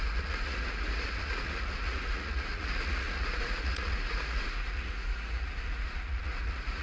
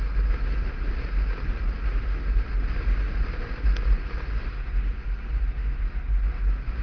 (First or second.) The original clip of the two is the second